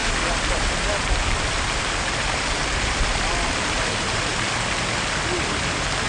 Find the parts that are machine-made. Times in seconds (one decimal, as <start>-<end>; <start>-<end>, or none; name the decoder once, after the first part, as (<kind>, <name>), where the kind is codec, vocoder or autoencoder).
2.0-4.3 (vocoder, BigVGAN v2); 5.4-6.1